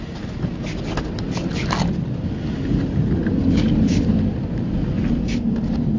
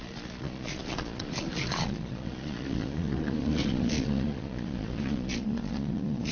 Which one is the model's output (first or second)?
second